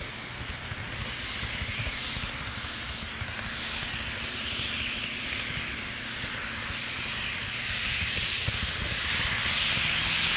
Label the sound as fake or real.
real